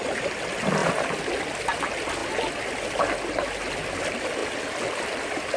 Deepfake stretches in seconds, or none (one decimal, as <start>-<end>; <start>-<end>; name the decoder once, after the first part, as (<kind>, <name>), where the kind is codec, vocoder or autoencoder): none